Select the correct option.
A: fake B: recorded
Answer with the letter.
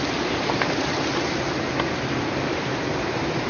B